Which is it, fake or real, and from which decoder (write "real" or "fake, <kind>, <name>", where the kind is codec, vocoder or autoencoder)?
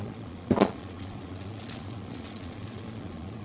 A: fake, vocoder, Vocos